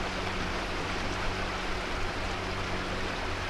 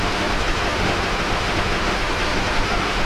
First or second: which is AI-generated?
second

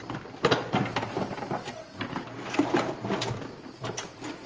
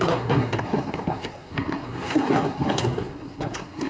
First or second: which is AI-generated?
second